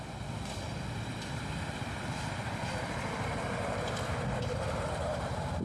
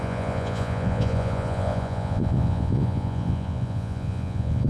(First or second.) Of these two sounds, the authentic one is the first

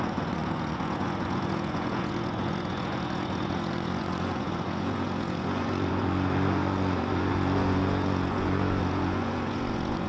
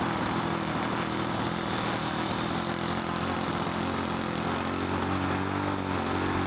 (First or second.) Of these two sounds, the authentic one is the second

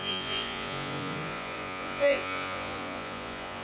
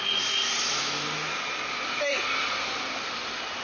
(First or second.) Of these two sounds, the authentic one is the second